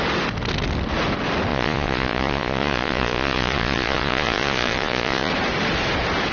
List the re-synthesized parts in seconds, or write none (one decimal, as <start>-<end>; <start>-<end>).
1.5-5.3